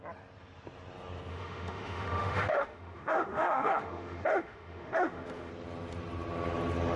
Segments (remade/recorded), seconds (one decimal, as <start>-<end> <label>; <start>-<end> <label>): 0.0-1.3 recorded; 1.3-5.5 remade; 5.5-7.0 recorded